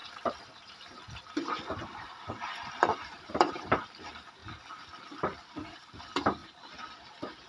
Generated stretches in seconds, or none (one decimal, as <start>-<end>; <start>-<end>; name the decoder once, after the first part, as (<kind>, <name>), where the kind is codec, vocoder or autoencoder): 0.0-4.4 (vocoder, BigVGAN v2); 5.5-6.4; 7.1-7.5